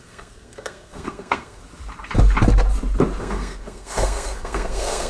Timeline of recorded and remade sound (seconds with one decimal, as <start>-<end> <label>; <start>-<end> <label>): 0.0-1.6 remade; 1.6-3.2 recorded; 3.2-5.1 remade